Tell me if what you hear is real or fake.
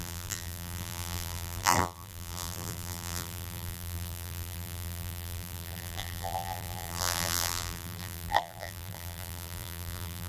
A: fake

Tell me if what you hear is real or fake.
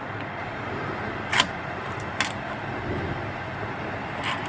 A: real